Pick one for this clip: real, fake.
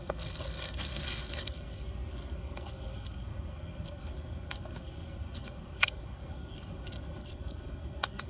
fake